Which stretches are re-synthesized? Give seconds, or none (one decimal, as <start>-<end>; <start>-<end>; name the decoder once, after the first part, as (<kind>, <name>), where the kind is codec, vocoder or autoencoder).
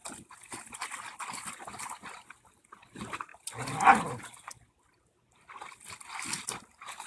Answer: none